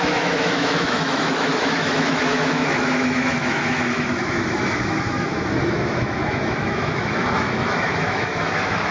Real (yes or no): no